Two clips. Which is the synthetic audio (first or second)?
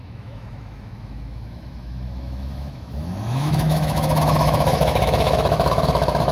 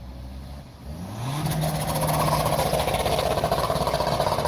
first